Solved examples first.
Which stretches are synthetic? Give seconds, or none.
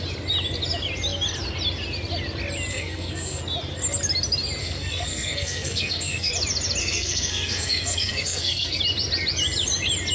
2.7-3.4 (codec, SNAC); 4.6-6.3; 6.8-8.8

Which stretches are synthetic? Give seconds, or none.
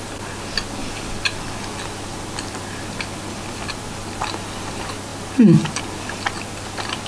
none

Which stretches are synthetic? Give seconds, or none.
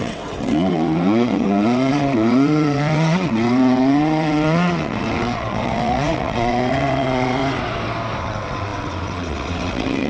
0.0-7.4 (vocoder, WaveNeXt); 8.2-10.1